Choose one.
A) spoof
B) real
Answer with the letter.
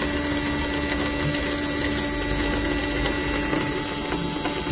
B